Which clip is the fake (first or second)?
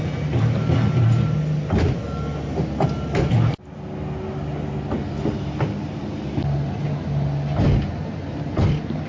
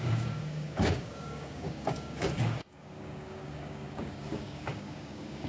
second